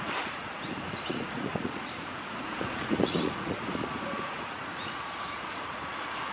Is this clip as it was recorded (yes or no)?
no